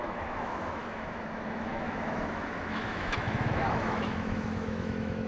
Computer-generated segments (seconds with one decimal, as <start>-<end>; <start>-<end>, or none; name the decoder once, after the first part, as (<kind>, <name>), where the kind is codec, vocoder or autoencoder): 0.0-5.3 (autoencoder, DAC-VAE)